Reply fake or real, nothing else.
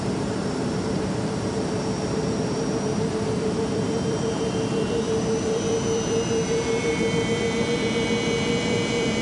fake